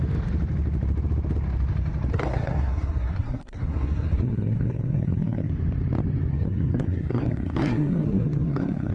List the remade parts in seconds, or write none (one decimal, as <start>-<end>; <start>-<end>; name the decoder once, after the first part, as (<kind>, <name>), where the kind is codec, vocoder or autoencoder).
2.1-5.5 (codec, SNAC); 6.3-8.9

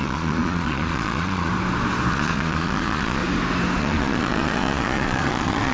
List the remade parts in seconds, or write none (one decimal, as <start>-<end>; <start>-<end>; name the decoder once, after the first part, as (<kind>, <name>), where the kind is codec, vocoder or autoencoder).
0.0-1.5 (vocoder, Vocos); 2.1-3.2; 3.8-5.7

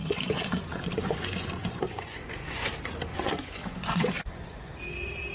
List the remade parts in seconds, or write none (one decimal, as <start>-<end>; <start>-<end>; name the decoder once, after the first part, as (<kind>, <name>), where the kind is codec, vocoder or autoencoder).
0.0-2.7 (vocoder, Vocos); 3.1-4.7

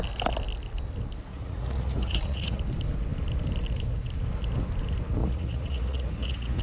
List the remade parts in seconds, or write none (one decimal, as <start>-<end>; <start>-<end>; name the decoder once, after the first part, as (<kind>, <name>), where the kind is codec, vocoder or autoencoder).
1.3-2.6 (vocoder, Vocos); 5.2-6.6